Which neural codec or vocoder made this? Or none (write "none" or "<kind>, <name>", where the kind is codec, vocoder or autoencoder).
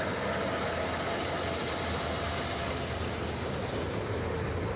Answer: none